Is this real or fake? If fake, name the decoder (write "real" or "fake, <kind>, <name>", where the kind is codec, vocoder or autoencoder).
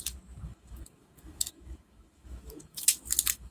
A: fake, autoencoder, DAC-VAE